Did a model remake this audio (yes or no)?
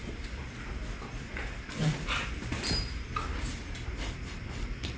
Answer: yes